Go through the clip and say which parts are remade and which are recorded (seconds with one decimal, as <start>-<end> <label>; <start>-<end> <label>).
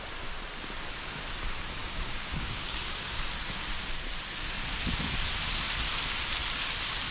0.0-1.8 recorded; 1.8-3.2 remade; 3.2-7.1 recorded